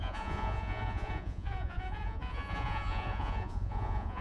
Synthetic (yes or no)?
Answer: yes